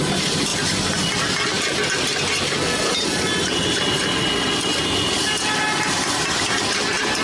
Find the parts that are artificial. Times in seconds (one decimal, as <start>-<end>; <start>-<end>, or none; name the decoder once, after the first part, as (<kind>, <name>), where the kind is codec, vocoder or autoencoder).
none